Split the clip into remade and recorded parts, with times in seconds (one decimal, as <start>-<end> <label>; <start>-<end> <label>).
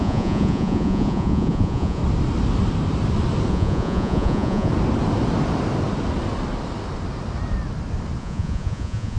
0.0-2.0 remade; 2.0-3.5 recorded; 3.5-4.7 remade; 4.7-8.2 recorded; 8.2-9.2 remade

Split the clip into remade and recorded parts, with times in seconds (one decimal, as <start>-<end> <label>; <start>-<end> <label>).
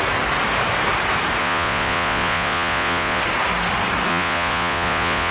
0.0-1.4 recorded; 1.4-3.2 remade; 3.2-4.1 recorded; 4.1-5.3 remade